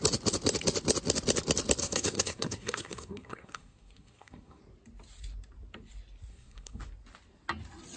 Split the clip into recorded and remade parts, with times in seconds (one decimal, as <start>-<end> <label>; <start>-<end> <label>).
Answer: 0.0-1.8 recorded; 1.8-4.6 remade; 4.6-6.3 recorded; 6.3-6.8 remade; 6.8-8.0 recorded